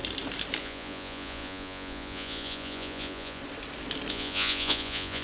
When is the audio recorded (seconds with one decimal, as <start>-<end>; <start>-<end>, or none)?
0.0-0.6; 3.4-4.1